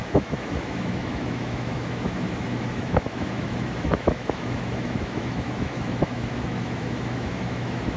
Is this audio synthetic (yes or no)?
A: yes